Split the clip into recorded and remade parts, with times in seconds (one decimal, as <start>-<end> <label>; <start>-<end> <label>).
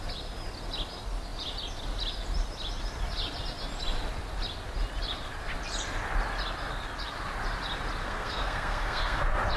0.0-8.0 recorded; 8.0-9.2 remade; 9.2-9.6 recorded